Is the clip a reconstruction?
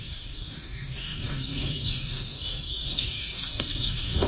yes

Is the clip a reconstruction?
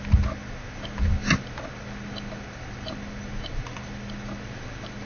no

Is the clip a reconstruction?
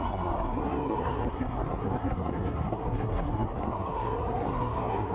yes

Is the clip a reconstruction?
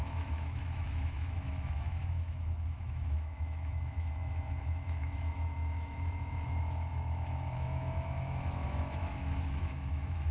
yes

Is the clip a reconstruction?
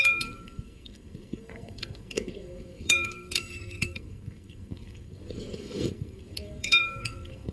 yes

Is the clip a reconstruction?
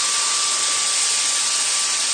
no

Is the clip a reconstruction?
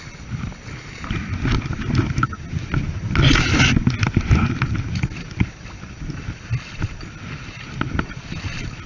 no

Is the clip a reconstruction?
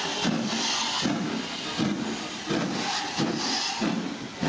no